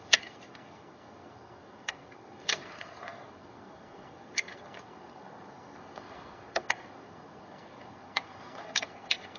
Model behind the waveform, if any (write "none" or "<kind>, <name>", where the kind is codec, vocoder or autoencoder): codec, SNAC